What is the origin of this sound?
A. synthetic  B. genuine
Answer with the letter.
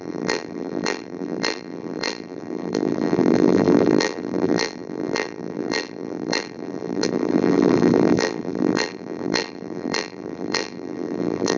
A